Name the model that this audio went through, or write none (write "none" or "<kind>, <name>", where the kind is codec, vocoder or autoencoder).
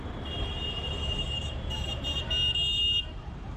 vocoder, BigVGAN v2